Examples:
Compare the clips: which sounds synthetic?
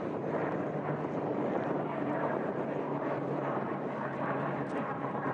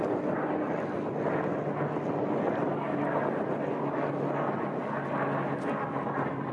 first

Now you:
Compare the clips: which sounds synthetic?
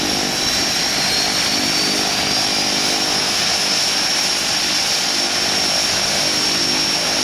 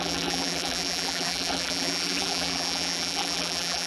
second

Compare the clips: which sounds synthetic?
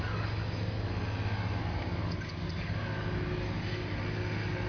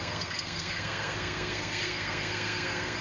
second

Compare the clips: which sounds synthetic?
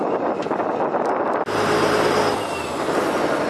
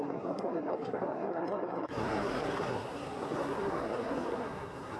second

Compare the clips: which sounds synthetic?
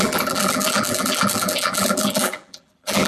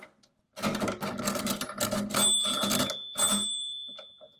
first